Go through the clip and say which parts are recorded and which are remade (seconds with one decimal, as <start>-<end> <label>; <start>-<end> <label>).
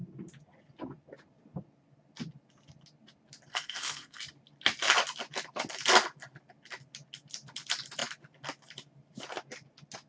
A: 0.0-3.5 recorded; 3.5-4.2 remade; 4.2-10.1 recorded